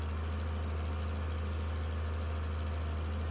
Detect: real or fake real